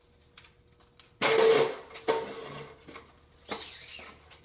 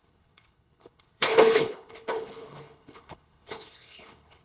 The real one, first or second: first